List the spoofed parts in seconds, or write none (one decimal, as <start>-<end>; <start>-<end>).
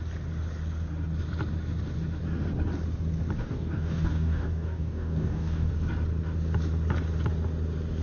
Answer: 3.4-5.7